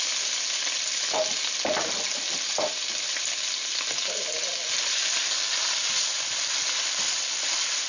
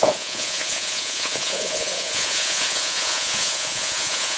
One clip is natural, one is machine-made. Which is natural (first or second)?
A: first